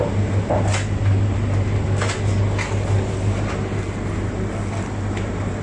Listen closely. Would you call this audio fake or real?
real